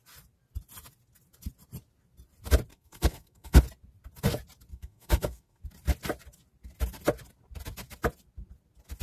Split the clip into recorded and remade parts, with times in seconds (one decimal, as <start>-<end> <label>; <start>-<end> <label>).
0.0-2.7 recorded; 2.7-3.6 remade; 3.6-4.7 recorded; 4.7-5.6 remade; 5.6-9.0 recorded